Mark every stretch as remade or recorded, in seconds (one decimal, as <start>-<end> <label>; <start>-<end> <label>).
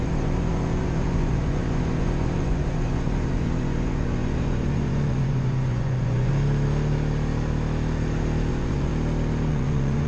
0.0-6.3 remade; 6.3-8.5 recorded; 8.5-8.9 remade; 8.9-9.5 recorded; 9.5-10.1 remade